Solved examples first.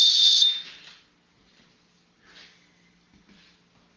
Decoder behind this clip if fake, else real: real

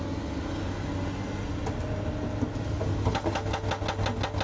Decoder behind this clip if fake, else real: real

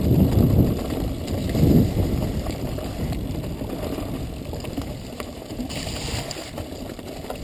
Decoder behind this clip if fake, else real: fake, vocoder, BigVGAN v2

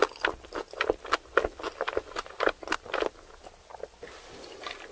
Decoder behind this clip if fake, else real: real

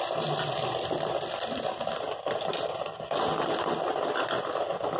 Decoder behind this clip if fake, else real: fake, vocoder, BigVGAN v2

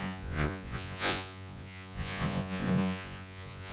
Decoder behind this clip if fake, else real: fake, vocoder, Vocos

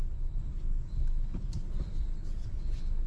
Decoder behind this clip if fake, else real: real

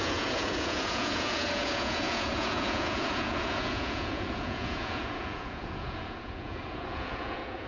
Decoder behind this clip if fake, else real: fake, vocoder, Vocos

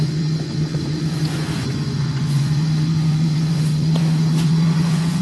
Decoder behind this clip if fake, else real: fake, vocoder, Vocos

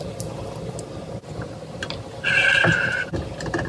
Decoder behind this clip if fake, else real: real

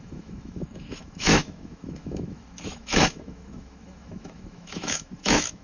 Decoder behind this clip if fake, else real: fake, autoencoder, DAC-VAE